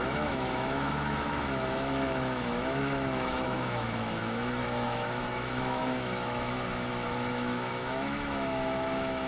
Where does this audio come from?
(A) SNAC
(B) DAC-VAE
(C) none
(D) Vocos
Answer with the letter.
B